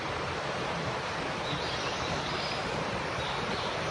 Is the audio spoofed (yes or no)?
yes